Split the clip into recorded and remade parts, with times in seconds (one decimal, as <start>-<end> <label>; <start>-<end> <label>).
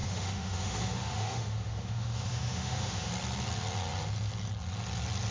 0.0-3.1 remade; 3.1-5.3 recorded